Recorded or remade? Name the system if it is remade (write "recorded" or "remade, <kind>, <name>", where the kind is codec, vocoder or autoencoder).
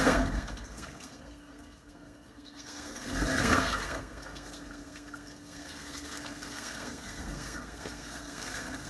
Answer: remade, codec, SNAC